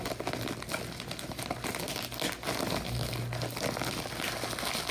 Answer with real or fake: real